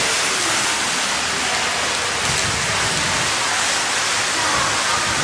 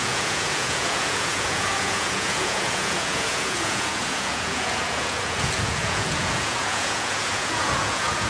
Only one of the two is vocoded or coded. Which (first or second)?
second